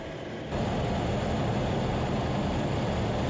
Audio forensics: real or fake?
real